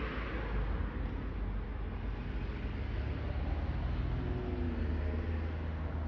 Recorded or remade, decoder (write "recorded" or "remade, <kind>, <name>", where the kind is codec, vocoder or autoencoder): recorded